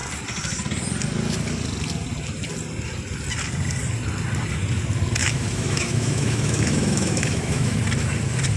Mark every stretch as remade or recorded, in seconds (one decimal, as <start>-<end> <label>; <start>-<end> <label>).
0.0-5.2 recorded; 5.2-7.8 remade; 7.8-8.6 recorded